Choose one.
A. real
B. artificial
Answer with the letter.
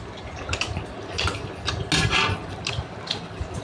A